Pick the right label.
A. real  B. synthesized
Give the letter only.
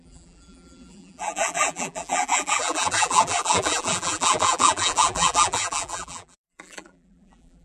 B